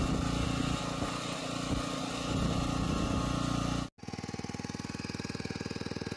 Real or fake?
real